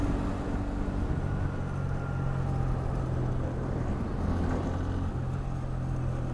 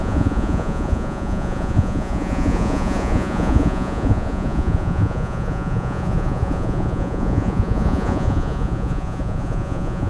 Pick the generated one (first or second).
second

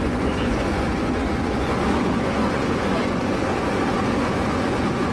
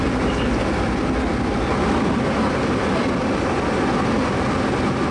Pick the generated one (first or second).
first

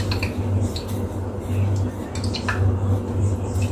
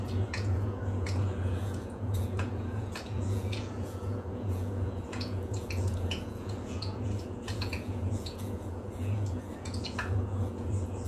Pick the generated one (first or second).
second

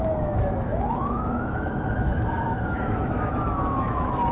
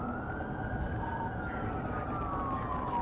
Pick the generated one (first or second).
first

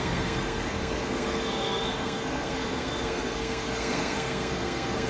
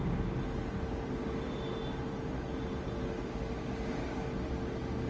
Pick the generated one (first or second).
first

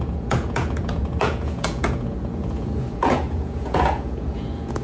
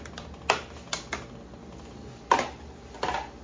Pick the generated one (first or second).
first